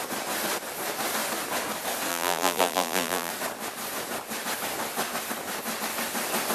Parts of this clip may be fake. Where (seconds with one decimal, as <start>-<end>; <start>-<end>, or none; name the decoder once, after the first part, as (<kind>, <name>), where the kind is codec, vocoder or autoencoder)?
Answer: 2.1-3.3 (vocoder, BigVGAN v2)